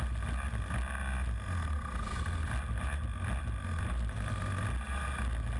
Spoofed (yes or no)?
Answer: no